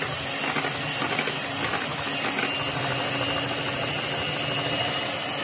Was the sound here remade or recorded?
recorded